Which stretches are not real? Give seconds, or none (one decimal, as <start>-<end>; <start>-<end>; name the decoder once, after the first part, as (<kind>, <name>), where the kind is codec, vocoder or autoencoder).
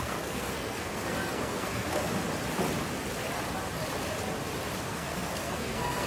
0.0-2.1 (codec, SNAC); 4.8-6.1